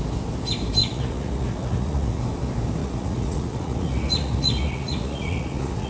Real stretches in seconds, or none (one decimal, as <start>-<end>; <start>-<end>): 0.0-0.8; 2.2-2.8